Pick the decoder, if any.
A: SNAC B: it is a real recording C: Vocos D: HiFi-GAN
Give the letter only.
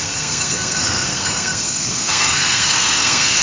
A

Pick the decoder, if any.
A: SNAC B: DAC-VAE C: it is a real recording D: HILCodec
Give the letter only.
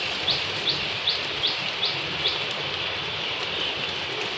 C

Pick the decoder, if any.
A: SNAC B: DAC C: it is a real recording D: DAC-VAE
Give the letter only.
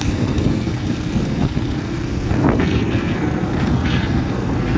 A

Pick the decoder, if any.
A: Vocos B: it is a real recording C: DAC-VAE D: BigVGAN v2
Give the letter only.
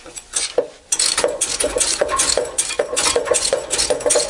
A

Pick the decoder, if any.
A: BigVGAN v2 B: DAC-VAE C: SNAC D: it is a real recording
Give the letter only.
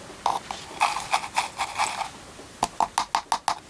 D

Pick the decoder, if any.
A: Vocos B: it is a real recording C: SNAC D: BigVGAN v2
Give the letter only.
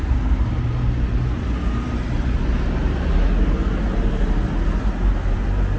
B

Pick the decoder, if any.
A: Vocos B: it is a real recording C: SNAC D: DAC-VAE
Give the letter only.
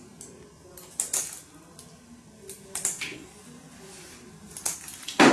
B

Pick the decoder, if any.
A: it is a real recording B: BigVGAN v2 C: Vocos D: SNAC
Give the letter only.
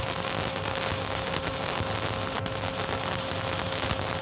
A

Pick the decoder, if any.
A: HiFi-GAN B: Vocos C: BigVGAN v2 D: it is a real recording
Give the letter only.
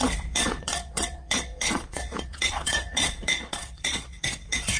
B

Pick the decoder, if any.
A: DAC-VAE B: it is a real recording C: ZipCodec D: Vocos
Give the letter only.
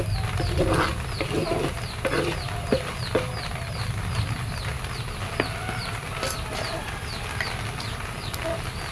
B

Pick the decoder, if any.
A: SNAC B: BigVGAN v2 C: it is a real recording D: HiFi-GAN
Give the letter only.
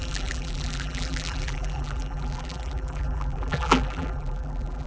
B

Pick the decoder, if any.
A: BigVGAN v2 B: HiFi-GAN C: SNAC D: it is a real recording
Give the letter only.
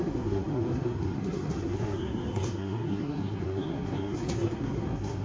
C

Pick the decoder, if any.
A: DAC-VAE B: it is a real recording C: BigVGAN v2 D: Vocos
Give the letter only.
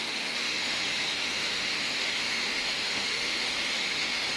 A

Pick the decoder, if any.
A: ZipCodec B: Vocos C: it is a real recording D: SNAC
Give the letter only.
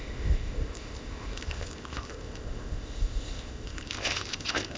A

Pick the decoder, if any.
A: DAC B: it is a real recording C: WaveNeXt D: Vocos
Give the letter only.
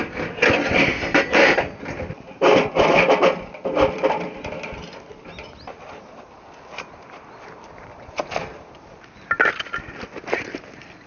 B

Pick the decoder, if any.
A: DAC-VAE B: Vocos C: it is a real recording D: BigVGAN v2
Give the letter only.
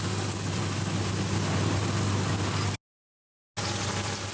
C